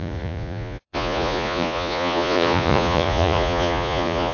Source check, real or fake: fake